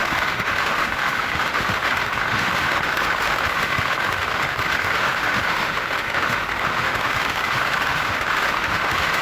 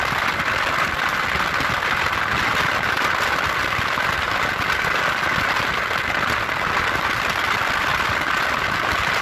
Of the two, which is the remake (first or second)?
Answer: first